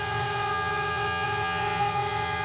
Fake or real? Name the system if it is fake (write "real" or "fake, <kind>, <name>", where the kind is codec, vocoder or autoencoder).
fake, vocoder, WaveNeXt